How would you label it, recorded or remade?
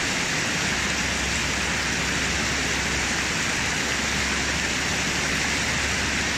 recorded